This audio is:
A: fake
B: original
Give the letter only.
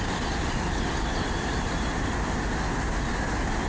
B